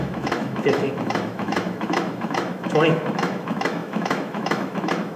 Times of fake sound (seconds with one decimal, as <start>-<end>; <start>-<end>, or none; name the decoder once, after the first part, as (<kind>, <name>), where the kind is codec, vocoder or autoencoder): 0.0-5.2 (autoencoder, DAC-VAE)